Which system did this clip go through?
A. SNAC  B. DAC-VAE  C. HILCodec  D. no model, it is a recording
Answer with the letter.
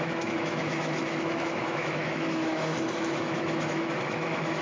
B